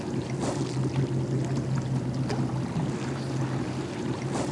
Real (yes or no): yes